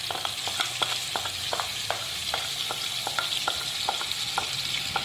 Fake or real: real